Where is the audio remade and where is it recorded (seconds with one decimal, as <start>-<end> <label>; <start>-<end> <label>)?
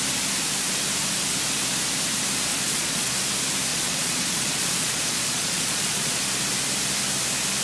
0.0-2.5 recorded; 2.5-3.1 remade; 3.1-3.7 recorded; 3.7-6.2 remade; 6.2-7.6 recorded